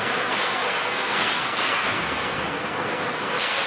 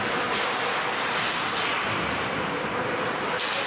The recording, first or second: second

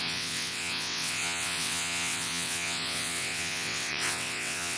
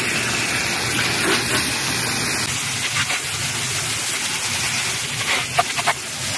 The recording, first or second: second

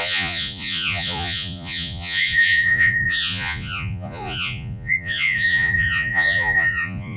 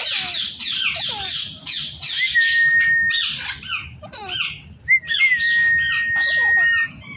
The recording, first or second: second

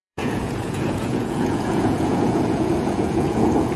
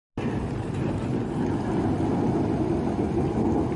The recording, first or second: second